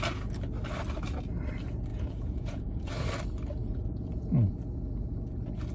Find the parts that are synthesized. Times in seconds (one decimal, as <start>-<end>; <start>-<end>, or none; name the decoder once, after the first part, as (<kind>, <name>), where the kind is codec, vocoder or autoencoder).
1.9-2.9 (vocoder, Vocos); 3.6-4.5